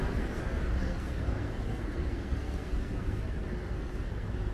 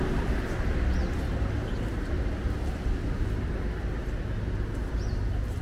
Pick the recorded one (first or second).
second